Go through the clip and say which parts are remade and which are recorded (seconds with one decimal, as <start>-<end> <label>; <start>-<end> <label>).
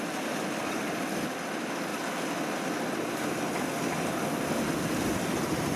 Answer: 0.0-5.8 recorded